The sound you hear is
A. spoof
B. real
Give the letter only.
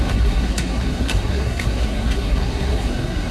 A